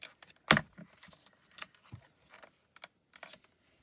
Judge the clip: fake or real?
real